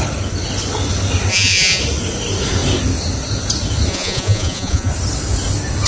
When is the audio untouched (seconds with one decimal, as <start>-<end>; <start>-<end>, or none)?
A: 0.0-1.3; 1.8-3.9; 4.9-5.9